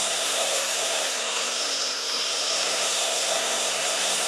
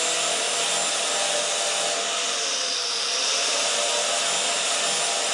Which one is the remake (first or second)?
first